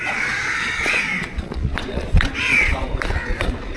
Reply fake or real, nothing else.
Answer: fake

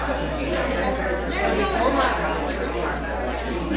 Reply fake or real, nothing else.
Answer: real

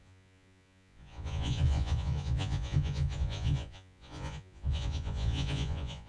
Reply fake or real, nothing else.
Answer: fake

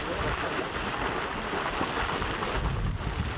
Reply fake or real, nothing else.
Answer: real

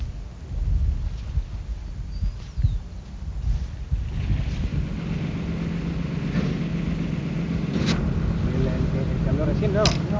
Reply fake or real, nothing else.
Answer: real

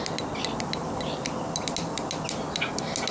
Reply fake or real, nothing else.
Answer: real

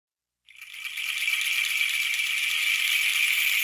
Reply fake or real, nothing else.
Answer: real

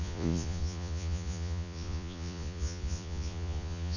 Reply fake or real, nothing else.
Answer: fake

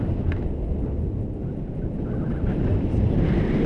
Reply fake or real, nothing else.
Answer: real